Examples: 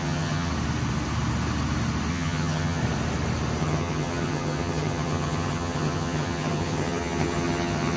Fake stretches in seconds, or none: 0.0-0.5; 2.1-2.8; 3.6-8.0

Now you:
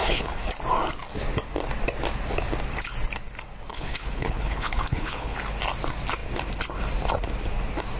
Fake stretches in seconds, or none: 0.0-0.5; 3.7-5.4

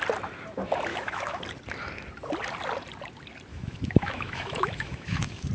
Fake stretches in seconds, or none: 0.9-1.4; 3.5-5.5

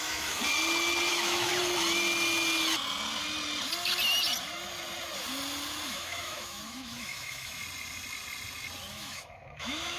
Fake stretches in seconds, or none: 0.0-0.4; 1.1-1.5; 5.9-7.6; 8.9-10.0